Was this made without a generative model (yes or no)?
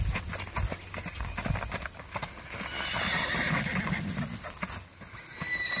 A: yes